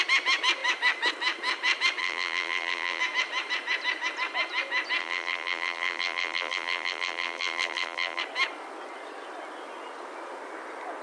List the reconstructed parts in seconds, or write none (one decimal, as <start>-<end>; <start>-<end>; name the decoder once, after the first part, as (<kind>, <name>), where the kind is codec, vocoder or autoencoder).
2.0-3.0 (vocoder, BigVGAN v2); 5.0-8.2